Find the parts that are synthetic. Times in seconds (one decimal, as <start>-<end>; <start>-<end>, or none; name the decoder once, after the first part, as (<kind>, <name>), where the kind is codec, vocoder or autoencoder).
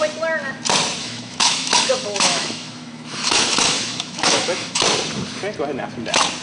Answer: 1.0-4.8 (autoencoder, DAC-VAE)